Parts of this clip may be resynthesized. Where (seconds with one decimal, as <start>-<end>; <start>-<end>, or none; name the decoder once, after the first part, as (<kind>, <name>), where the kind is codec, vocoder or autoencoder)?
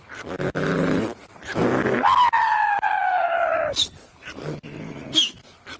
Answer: none